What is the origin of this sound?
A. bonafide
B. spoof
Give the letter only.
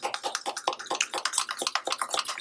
A